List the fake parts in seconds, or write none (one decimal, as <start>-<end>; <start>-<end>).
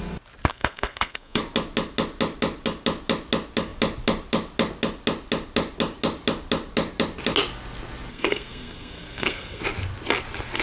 0.5-1.4; 8.1-9.6